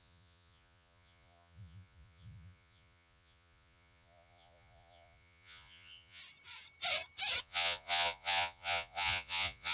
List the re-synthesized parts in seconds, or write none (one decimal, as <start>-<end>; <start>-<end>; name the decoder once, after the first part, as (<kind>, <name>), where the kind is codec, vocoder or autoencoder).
0.0-6.2 (vocoder, Vocos); 7.4-9.7